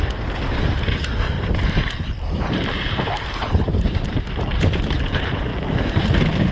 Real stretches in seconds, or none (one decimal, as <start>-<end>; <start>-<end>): 5.5-6.5